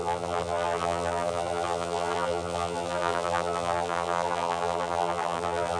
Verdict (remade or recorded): remade